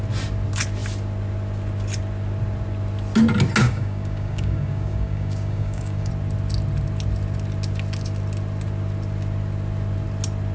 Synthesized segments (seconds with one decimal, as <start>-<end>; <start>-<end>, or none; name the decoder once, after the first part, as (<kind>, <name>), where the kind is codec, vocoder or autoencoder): 3.6-6.1 (codec, DAC)